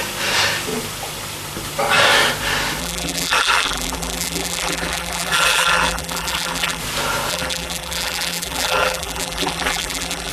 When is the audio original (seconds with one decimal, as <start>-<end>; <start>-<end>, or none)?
0.0-2.8; 6.8-7.3